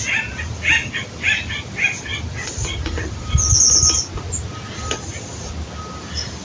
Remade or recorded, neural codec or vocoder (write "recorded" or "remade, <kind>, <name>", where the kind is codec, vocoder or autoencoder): recorded